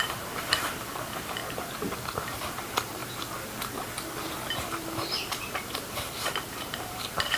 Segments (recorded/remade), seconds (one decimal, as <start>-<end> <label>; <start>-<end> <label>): 0.0-1.4 remade; 1.4-2.4 recorded; 2.4-3.0 remade; 3.0-4.7 recorded; 4.7-7.4 remade